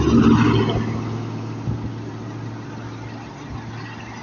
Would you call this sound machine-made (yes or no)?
no